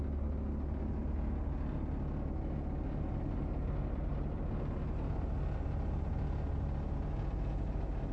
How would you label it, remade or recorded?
recorded